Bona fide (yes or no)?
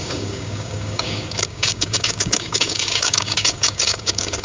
no